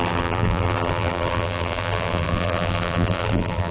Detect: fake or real fake